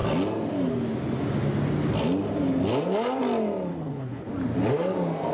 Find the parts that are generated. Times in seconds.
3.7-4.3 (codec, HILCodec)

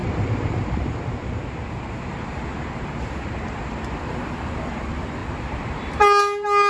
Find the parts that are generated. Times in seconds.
none

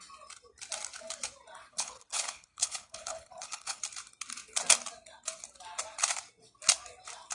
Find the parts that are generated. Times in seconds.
1.7-3.8 (codec, HILCodec)

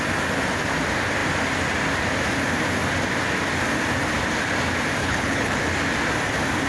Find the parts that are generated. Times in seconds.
5.0-5.6 (codec, HILCodec)

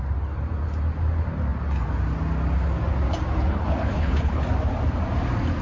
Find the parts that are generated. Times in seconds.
3.5-4.4 (codec, HILCodec)

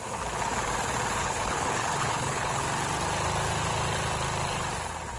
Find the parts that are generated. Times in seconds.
1.2-2.6 (codec, HILCodec)

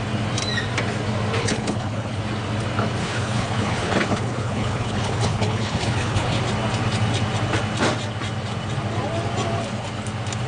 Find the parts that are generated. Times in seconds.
1.4-2.2 (codec, HILCodec); 3.0-6.4